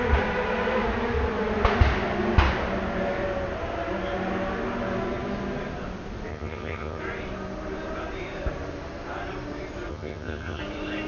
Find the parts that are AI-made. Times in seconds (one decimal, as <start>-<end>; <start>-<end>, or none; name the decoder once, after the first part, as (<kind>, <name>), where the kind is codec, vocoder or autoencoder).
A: 6.3-7.0 (vocoder, HiFi-GAN); 9.9-10.6